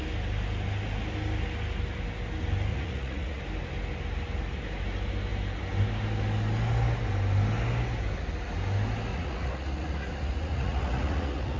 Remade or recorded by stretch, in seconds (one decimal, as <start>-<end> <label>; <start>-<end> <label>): 0.0-2.7 recorded; 2.7-3.4 remade; 3.4-9.1 recorded; 9.1-11.6 remade